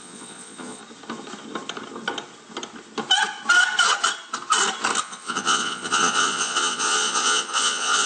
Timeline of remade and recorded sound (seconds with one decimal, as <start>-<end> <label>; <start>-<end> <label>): 0.0-0.8 remade; 0.8-5.0 recorded; 5.0-8.1 remade